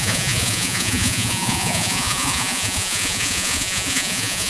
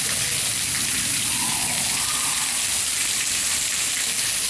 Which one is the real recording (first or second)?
second